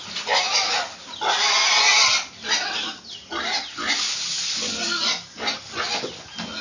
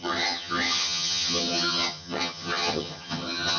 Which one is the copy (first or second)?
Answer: second